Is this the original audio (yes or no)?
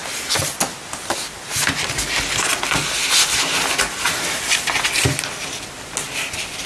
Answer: yes